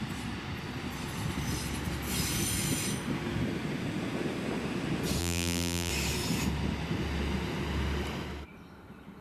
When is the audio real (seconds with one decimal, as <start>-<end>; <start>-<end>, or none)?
0.0-5.2; 5.9-9.2